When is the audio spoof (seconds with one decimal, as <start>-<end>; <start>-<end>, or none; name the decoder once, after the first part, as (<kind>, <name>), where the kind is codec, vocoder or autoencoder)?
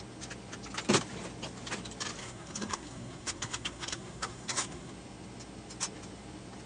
2.2-4.9 (codec, SNAC)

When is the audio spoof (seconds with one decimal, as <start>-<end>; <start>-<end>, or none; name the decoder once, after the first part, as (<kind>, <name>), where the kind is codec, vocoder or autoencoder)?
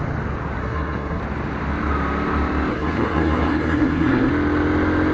0.6-1.2 (codec, SNAC); 2.7-4.3